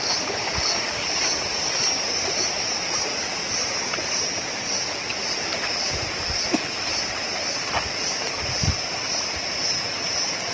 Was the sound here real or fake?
real